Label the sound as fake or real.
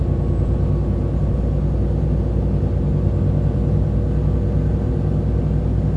real